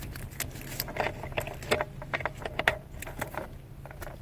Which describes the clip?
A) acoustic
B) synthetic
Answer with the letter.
A